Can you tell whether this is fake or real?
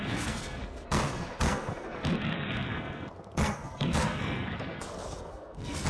fake